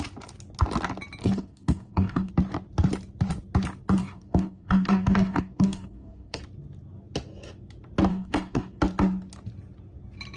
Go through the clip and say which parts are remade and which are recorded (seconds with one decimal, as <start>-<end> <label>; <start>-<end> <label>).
0.0-1.2 recorded; 1.2-2.3 remade; 2.3-4.0 recorded; 4.0-6.4 remade; 6.4-8.1 recorded; 8.1-8.8 remade; 8.8-10.4 recorded